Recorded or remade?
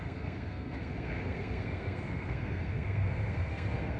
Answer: remade